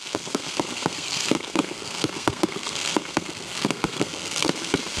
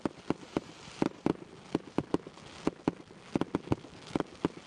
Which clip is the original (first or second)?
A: second